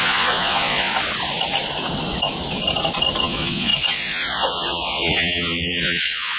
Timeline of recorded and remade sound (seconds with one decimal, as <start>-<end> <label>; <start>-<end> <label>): 0.0-0.9 remade; 0.9-3.2 recorded; 3.2-6.4 remade